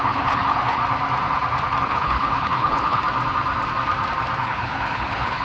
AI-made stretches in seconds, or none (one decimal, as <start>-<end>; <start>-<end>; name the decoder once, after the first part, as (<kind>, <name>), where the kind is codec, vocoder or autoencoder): 0.0-0.8 (codec, HILCodec); 1.8-3.0; 4.4-5.4